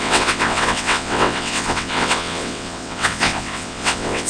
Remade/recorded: remade